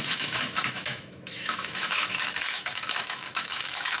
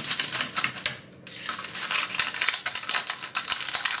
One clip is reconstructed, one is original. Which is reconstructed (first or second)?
first